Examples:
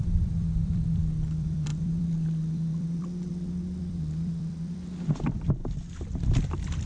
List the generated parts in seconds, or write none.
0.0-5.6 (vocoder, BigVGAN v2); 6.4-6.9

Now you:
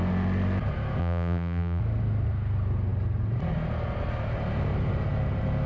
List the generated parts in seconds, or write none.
1.0-1.8 (vocoder, BigVGAN v2)

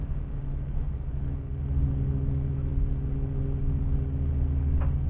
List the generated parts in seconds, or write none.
none

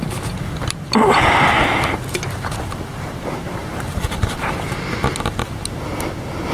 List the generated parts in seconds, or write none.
3.6-4.4 (vocoder, BigVGAN v2)

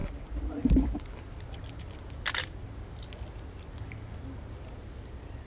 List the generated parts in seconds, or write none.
none

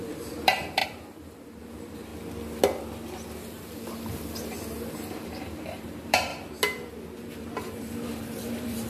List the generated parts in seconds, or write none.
0.0-2.1 (vocoder, BigVGAN v2); 4.9-6.3; 7.2-8.9

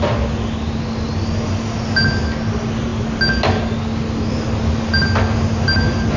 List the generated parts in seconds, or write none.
none